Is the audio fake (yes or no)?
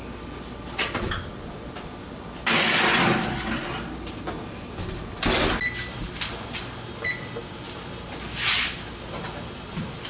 no